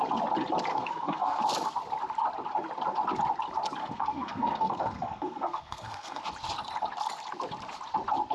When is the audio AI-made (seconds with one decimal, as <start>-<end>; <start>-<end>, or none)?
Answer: 0.7-1.4; 3.8-6.2